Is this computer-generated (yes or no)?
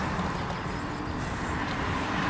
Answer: no